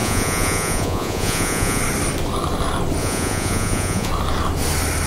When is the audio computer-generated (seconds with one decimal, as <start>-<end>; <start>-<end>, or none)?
0.0-1.8; 3.0-4.1